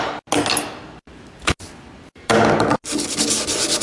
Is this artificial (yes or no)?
no